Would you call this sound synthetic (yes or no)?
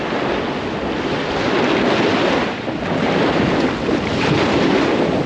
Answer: no